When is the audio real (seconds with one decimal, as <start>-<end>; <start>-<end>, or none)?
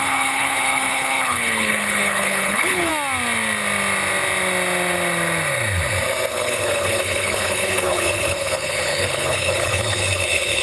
2.9-6.3